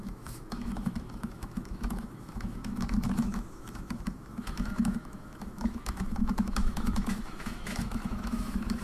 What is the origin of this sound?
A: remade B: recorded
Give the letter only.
A